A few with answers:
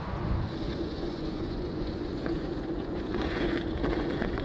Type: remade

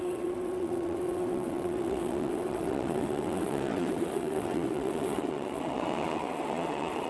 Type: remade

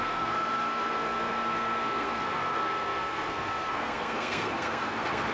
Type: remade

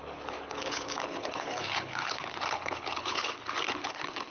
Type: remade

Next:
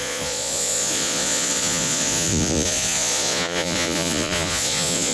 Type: remade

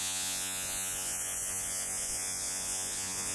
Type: remade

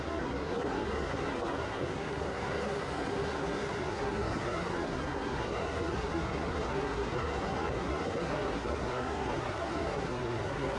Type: remade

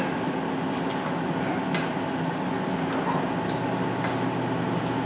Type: recorded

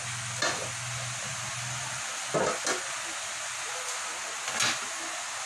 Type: recorded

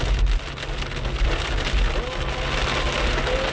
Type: recorded